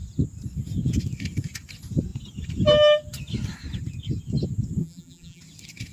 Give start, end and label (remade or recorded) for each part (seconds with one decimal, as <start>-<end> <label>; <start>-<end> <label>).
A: 0.0-4.8 recorded; 4.8-5.4 remade; 5.4-5.9 recorded